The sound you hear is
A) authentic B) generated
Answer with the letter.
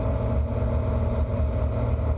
A